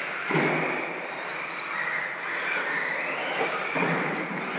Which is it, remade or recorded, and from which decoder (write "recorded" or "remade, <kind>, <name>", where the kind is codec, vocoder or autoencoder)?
recorded